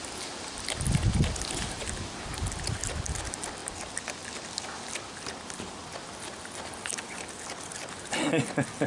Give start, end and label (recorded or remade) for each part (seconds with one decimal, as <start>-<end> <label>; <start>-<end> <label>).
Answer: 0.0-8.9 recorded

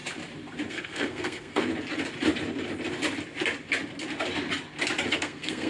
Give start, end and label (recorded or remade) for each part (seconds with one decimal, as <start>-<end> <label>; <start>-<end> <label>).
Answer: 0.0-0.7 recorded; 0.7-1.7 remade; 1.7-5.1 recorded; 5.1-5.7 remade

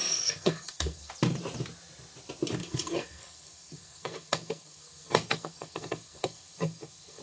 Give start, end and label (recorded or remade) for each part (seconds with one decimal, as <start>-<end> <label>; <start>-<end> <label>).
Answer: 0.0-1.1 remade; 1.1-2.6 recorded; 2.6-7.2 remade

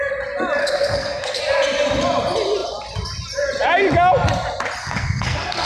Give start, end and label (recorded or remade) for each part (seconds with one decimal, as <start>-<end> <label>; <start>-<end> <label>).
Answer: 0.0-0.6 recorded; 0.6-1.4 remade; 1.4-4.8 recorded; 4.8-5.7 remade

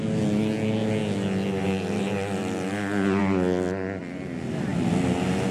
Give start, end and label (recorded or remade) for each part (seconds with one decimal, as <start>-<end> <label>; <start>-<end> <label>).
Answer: 0.0-5.5 recorded

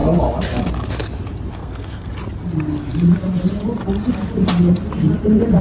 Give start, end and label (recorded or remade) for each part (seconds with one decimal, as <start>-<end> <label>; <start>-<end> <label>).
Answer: 0.0-1.6 recorded; 1.6-2.1 remade; 2.1-5.6 recorded